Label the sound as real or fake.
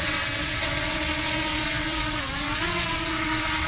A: fake